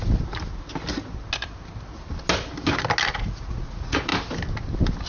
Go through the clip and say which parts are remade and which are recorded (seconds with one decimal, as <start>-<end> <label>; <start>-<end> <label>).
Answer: 0.0-3.1 recorded; 3.1-4.1 remade; 4.1-5.1 recorded